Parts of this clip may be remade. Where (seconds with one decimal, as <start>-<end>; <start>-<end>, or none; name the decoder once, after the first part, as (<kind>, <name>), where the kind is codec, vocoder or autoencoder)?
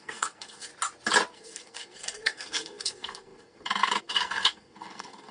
0.0-0.7 (codec, SNAC); 1.3-5.3